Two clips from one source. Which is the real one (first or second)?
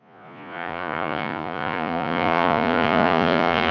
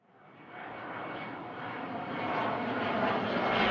second